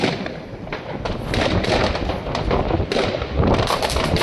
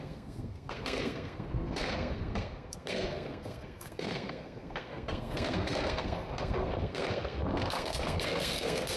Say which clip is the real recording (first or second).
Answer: first